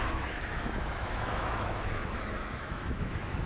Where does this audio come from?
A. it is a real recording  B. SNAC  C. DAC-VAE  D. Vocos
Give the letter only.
C